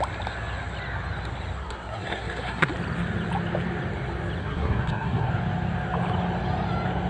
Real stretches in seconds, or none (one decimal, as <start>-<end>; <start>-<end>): 0.0-1.6; 2.7-4.4; 5.3-7.1